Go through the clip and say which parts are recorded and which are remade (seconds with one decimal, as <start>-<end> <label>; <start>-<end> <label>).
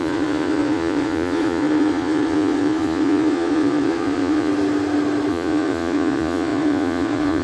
0.0-4.5 remade; 4.5-5.3 recorded; 5.3-7.4 remade